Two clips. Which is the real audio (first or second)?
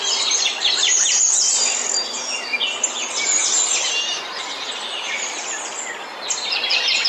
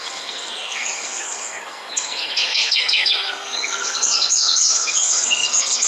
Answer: first